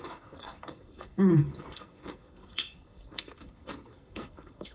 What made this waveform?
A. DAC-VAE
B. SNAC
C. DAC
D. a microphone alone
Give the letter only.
B